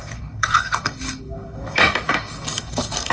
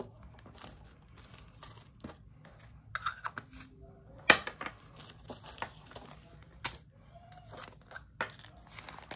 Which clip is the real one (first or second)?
second